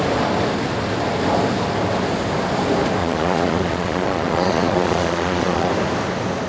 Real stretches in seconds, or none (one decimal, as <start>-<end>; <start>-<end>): 0.0-3.0; 5.7-6.5